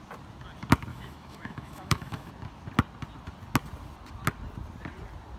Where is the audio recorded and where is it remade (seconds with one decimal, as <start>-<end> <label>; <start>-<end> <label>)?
0.0-0.9 recorded; 0.9-2.3 remade; 2.3-5.4 recorded